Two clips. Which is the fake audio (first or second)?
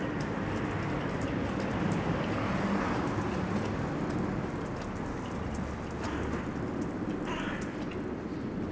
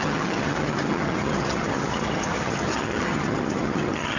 second